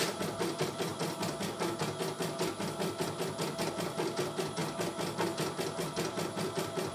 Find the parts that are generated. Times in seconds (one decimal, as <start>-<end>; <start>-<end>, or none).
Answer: 0.0-0.9; 3.7-4.6; 5.9-6.9